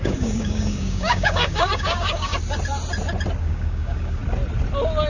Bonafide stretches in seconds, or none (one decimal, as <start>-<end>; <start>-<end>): 2.3-3.4; 4.2-5.1